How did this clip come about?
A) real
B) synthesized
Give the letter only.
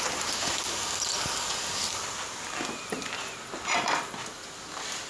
A